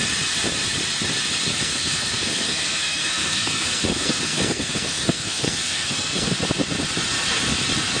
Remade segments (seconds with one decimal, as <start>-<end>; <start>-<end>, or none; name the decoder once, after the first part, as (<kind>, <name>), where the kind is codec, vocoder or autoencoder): 1.5-6.3 (codec, SNAC)